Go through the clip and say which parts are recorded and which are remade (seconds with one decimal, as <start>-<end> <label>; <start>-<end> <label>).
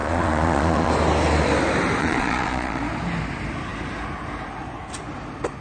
0.0-0.9 remade; 0.9-2.0 recorded; 2.0-2.8 remade; 2.8-5.6 recorded